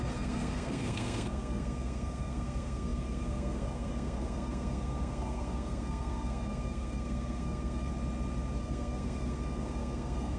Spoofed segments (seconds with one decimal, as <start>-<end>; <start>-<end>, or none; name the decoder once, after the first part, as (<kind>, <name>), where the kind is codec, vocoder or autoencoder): 0.0-7.9 (codec, SNAC); 8.6-10.4